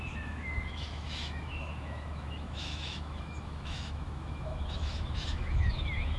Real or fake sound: fake